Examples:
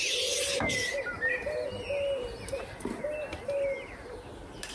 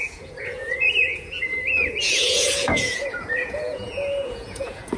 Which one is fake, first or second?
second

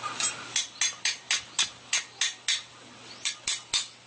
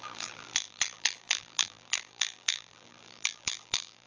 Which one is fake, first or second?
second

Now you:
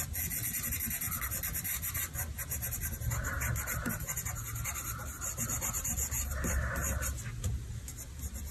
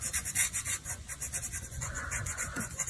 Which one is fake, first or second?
second